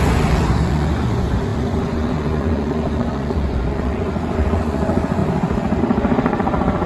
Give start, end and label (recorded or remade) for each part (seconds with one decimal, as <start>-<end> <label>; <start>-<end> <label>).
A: 0.0-6.9 remade